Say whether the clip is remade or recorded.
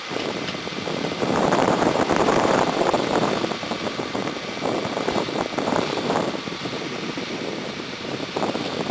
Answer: remade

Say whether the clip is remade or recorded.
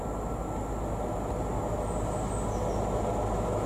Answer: recorded